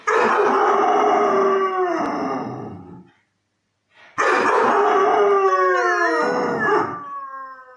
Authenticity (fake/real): real